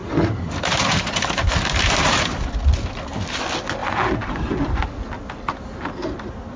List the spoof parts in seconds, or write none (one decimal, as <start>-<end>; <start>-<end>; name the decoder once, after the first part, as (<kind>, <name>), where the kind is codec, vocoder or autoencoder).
0.0-2.5 (vocoder, BigVGAN v2); 3.8-4.8